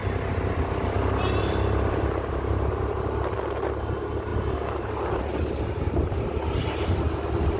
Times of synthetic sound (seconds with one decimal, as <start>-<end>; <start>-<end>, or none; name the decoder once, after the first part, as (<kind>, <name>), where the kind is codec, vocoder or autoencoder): none

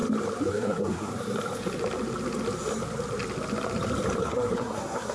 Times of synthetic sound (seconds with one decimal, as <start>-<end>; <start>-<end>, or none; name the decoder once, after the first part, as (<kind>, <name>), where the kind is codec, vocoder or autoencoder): 0.5-1.1 (codec, SNAC); 4.2-5.1

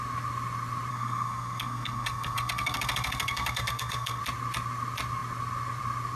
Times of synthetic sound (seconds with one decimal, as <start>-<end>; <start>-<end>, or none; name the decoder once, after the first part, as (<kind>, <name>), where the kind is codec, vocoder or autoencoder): 0.9-4.2 (codec, SNAC)

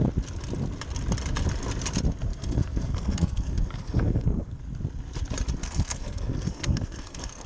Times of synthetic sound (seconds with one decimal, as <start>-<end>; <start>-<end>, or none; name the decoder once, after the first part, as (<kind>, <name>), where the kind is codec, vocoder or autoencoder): 2.3-4.6 (codec, SNAC); 5.6-7.5

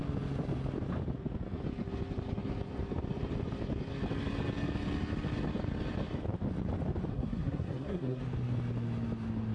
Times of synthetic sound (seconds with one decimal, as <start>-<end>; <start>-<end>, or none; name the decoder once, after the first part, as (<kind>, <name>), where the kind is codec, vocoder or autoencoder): 7.1-8.2 (codec, SNAC)

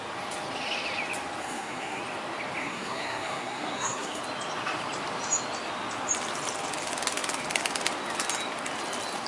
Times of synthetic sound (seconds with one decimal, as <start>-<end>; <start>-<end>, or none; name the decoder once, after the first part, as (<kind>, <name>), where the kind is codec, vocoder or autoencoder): 1.4-2.0 (codec, SNAC); 2.6-4.2

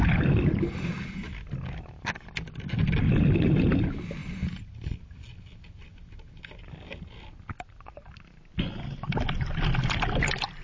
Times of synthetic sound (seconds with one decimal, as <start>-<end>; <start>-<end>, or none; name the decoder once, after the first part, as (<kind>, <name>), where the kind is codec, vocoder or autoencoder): none

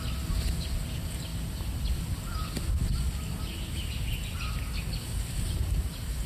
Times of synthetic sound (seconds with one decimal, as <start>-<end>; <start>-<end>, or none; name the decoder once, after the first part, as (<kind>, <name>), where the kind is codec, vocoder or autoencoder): none